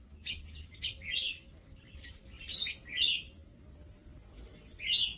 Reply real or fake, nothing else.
real